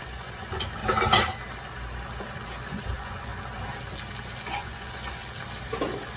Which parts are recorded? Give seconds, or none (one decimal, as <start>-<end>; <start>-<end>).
0.8-2.7; 3.3-4.4; 5.2-6.2